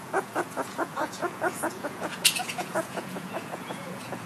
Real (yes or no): no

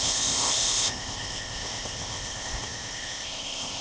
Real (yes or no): no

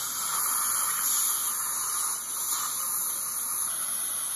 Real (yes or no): yes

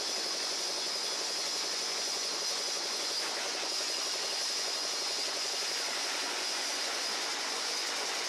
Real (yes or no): no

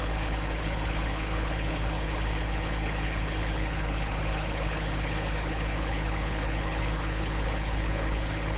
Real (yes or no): no